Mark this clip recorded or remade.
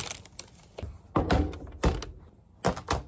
recorded